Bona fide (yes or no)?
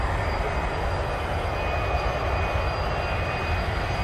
yes